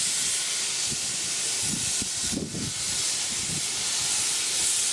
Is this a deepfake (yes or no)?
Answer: no